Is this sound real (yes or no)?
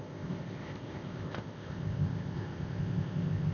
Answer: no